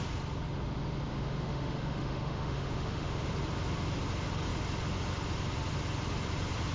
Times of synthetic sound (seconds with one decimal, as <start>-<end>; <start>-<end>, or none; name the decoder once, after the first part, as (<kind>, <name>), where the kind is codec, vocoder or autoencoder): 1.1-3.3 (autoencoder, DAC-VAE)